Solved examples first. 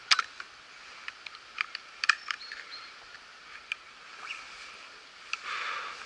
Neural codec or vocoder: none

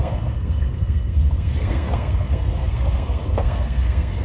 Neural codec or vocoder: codec, SNAC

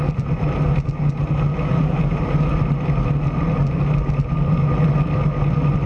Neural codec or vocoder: none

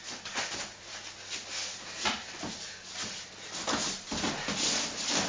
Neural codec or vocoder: none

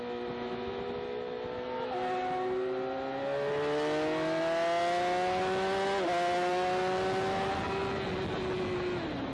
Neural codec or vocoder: none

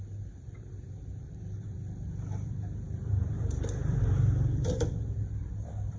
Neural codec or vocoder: vocoder, BigVGAN v2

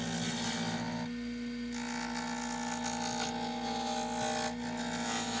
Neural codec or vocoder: none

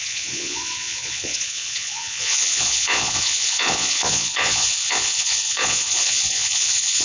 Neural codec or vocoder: vocoder, Vocos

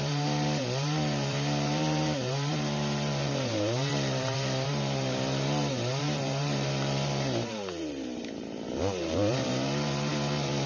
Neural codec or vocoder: vocoder, BigVGAN v2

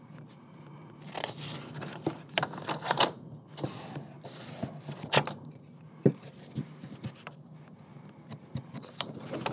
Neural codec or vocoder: none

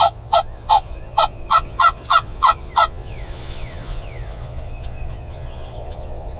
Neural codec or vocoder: vocoder, Vocos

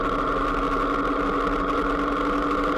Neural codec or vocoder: none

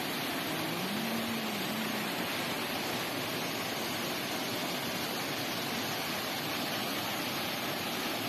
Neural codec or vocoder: none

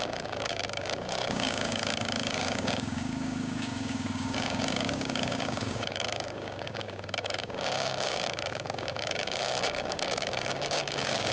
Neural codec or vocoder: codec, DAC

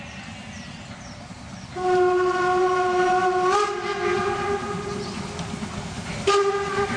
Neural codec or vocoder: none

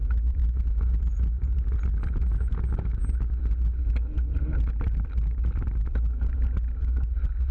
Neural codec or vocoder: none